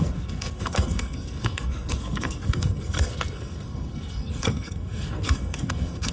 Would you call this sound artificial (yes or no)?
yes